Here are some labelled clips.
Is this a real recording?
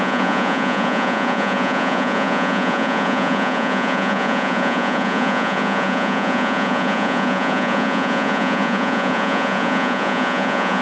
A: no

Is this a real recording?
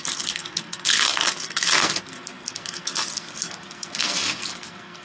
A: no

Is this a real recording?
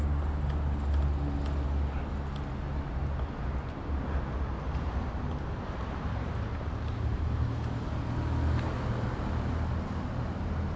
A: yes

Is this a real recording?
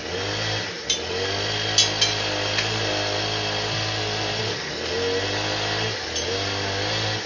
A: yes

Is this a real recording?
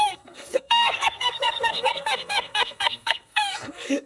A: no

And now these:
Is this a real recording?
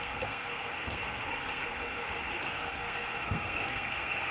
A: no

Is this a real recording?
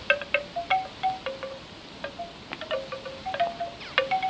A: yes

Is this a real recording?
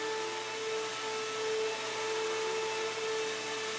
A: yes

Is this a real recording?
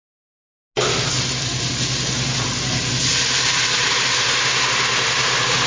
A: yes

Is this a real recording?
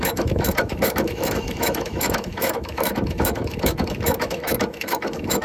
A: no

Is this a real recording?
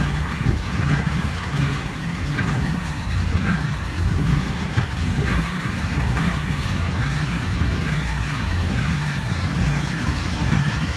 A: no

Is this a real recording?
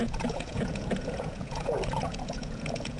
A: no